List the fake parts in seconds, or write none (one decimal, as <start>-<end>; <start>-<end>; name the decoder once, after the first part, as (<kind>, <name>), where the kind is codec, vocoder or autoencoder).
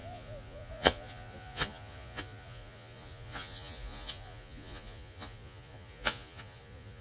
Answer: 0.0-7.0 (vocoder, Vocos)